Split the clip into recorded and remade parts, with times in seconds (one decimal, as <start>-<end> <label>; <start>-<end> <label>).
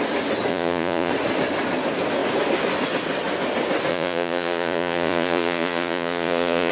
0.0-0.5 recorded; 0.5-1.1 remade; 1.1-3.9 recorded; 3.9-6.7 remade